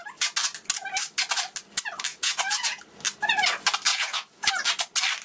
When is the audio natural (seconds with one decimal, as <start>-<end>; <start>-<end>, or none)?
0.0-2.1; 2.8-3.9; 4.5-5.2